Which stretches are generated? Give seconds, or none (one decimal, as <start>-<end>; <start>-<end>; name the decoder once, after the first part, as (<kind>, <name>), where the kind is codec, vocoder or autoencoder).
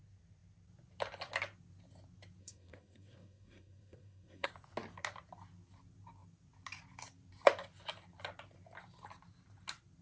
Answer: 2.4-4.5 (codec, SNAC)